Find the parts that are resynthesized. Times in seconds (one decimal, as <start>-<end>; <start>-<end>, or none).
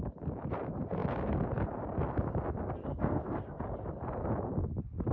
2.9-3.6